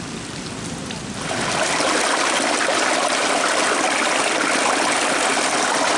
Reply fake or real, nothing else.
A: real